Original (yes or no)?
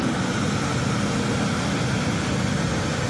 yes